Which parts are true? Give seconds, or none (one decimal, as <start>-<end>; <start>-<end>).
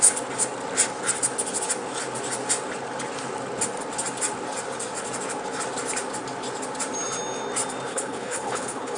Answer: 0.0-7.9